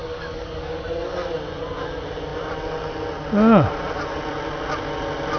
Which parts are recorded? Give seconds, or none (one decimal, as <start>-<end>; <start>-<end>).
0.8-5.4